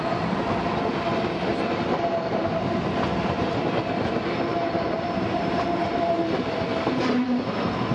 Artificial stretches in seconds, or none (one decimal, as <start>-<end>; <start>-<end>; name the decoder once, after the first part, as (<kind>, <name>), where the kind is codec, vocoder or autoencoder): 4.5-5.8 (vocoder, BigVGAN v2)